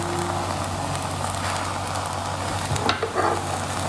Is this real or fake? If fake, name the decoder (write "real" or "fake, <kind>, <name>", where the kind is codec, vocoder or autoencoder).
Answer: real